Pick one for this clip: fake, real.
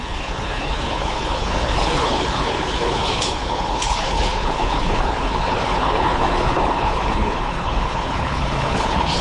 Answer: fake